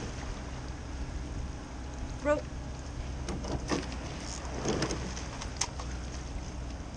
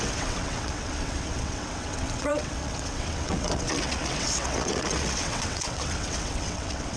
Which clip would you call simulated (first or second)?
second